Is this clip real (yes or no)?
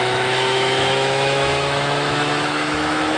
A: no